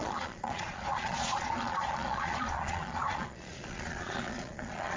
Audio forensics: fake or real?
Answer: fake